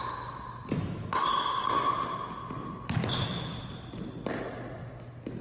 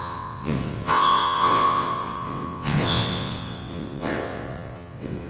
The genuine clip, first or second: first